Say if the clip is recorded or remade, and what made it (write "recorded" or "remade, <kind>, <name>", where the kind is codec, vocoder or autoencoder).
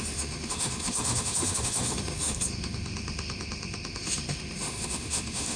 remade, autoencoder, DAC-VAE